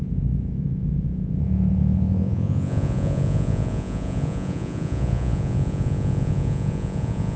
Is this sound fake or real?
fake